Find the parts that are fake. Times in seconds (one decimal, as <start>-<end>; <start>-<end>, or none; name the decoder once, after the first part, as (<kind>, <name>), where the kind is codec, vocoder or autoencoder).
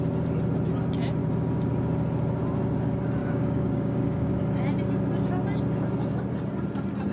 3.2-4.4 (codec, DAC)